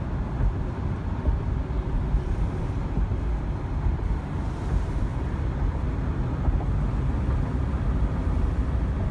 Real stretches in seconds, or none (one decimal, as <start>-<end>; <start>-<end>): 0.0-1.0; 2.6-5.1; 5.9-9.1